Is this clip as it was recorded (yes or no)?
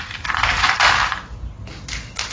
yes